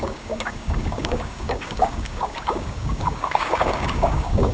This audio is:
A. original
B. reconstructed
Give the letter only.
B